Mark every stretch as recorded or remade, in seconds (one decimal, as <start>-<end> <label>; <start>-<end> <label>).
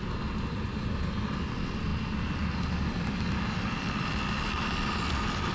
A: 0.0-5.5 recorded